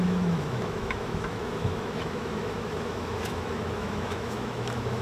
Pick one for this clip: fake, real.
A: fake